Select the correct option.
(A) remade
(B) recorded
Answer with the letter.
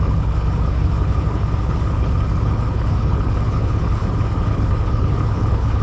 A